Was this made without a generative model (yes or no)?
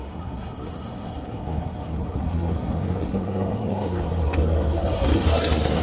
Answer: no